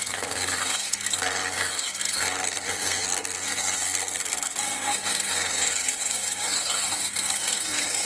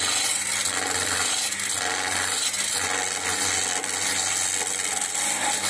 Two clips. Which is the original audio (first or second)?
second